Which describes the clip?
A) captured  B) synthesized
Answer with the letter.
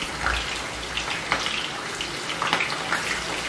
A